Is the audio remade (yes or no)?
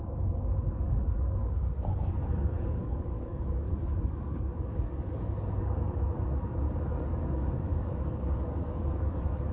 yes